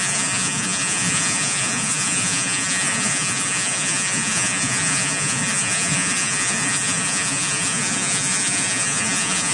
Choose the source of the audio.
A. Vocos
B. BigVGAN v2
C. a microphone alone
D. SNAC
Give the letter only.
A